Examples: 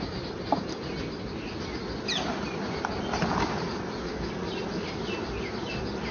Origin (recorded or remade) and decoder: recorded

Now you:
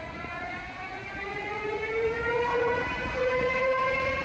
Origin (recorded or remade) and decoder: remade, vocoder, Vocos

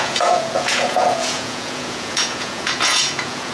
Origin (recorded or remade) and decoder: remade, vocoder, Vocos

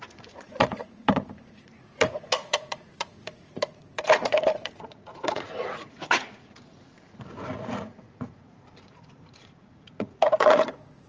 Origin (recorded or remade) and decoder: remade, vocoder, Vocos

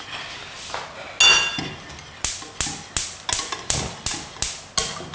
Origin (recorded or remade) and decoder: recorded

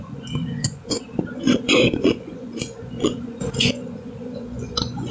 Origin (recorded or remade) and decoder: remade, vocoder, Vocos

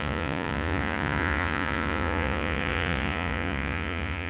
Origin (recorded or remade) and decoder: remade, vocoder, Vocos